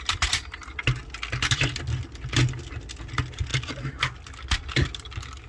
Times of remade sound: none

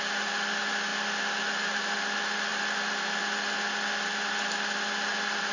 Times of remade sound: none